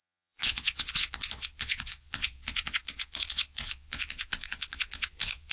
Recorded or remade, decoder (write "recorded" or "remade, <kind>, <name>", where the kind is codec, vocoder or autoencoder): remade, vocoder, Vocos